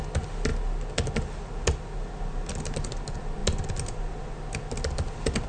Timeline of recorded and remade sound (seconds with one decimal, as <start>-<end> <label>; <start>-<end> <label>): 0.0-5.5 recorded